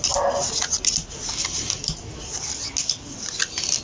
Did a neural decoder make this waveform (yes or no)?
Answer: no